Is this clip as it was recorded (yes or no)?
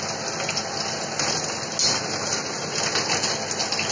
yes